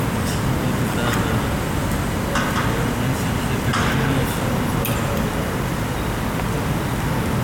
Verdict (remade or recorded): recorded